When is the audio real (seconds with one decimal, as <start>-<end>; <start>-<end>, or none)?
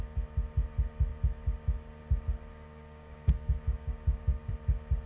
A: 0.0-2.5; 4.5-5.1